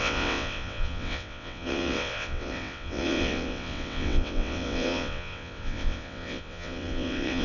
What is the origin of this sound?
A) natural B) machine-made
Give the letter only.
B